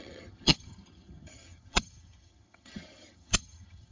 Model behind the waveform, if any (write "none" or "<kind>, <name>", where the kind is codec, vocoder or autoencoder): vocoder, HiFi-GAN